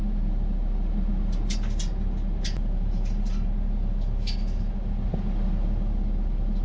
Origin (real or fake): real